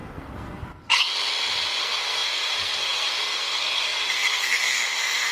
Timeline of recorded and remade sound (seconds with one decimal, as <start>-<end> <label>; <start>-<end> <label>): 0.0-1.1 remade; 1.1-1.8 recorded; 1.8-5.3 remade